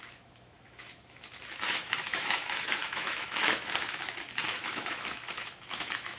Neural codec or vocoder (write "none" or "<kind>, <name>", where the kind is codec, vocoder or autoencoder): autoencoder, DAC-VAE